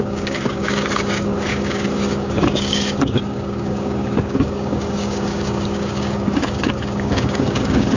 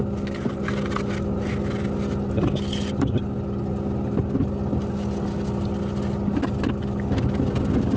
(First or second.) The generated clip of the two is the first